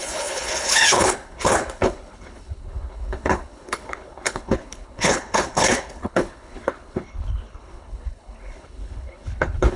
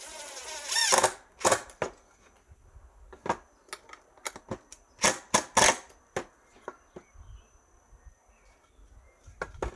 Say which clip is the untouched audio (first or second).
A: second